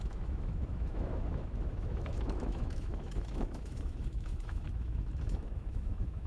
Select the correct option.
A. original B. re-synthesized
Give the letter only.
B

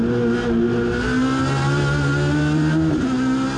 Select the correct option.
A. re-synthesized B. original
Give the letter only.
B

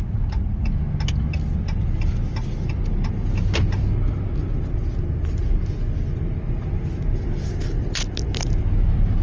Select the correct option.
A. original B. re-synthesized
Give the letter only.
A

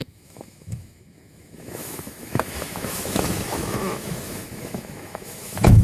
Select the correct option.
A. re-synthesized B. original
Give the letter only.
A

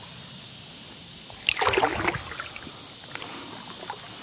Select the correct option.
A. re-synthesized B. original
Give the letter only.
B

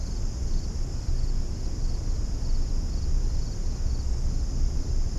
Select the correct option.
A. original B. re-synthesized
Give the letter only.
A